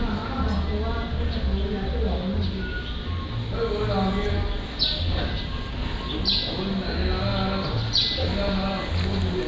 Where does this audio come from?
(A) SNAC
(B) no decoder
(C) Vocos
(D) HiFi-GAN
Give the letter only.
B